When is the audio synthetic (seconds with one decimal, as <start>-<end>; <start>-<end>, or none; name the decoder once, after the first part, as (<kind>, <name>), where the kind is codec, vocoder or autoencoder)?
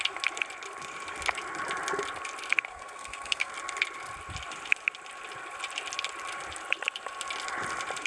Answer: 2.7-3.5 (codec, SNAC)